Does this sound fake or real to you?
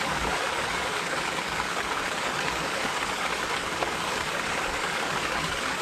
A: fake